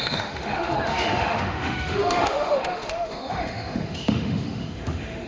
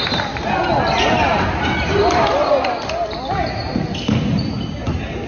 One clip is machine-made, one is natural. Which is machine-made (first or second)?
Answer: first